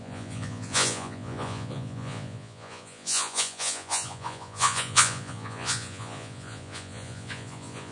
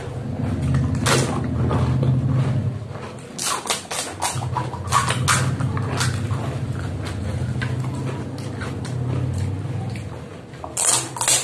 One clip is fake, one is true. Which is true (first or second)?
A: second